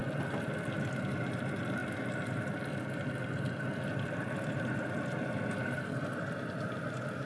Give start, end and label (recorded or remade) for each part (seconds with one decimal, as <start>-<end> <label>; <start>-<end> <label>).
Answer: 0.0-7.3 recorded